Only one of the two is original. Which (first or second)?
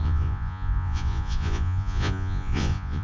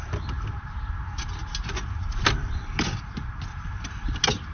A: second